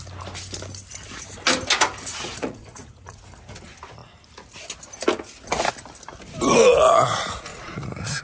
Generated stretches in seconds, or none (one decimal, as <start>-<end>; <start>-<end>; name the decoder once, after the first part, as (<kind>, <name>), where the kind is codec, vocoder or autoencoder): 2.1-3.2 (vocoder, Vocos); 7.5-8.2

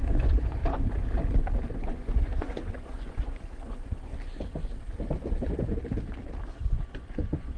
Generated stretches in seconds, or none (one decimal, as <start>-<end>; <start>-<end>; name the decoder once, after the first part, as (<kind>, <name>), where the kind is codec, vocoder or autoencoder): 0.0-0.6 (vocoder, Vocos); 1.7-4.1; 6.4-7.6